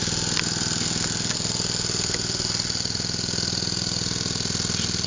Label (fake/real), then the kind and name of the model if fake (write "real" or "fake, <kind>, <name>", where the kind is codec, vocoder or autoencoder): real